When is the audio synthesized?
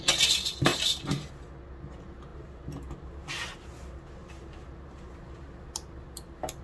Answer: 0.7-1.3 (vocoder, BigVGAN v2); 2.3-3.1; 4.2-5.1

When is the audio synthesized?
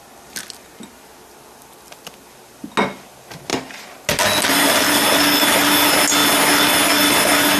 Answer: 3.5-4.0 (vocoder, BigVGAN v2)